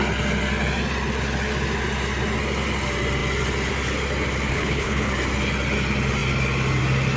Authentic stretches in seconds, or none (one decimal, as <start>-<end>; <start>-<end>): 0.0-4.5; 5.1-7.2